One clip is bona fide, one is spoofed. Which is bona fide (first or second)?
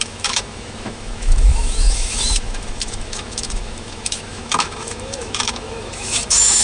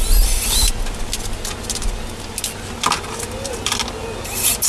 second